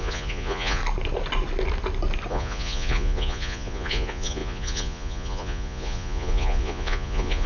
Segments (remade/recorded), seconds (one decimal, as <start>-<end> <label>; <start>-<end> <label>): 0.0-0.8 remade; 0.8-2.3 recorded; 2.3-7.5 remade